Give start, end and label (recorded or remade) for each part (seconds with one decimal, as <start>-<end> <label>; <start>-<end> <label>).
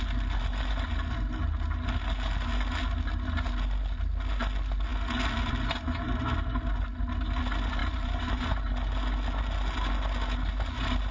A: 0.0-7.8 recorded; 7.8-8.6 remade; 8.6-11.1 recorded